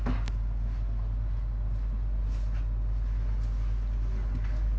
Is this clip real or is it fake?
real